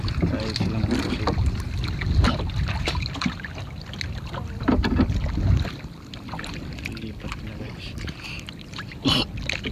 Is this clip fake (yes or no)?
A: no